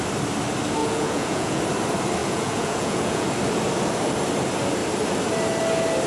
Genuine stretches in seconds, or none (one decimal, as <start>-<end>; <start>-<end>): 0.0-0.8; 1.6-2.2; 3.3-6.1